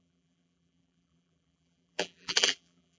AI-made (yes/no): yes